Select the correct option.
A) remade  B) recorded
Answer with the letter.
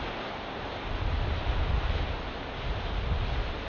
B